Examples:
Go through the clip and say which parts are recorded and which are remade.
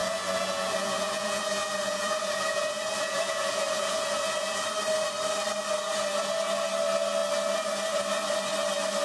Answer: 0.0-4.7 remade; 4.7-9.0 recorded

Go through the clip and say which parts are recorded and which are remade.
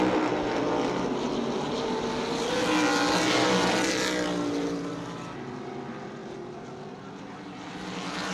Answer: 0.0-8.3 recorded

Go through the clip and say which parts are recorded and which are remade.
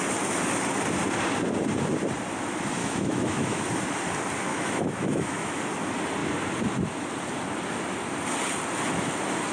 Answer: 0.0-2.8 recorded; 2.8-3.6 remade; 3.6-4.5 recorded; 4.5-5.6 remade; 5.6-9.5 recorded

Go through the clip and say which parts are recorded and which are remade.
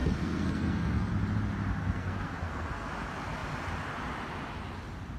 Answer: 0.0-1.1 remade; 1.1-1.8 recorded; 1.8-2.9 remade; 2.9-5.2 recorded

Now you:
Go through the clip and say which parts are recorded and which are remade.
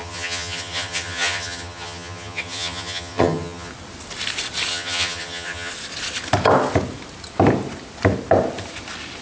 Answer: 0.0-3.7 remade; 3.7-4.7 recorded; 4.7-5.7 remade; 5.7-9.2 recorded